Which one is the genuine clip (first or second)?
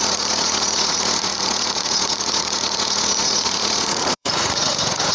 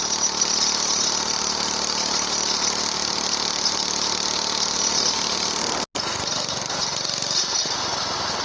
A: second